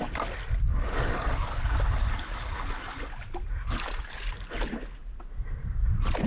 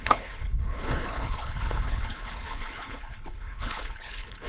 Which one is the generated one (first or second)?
second